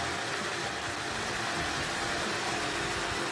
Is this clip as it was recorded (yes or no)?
yes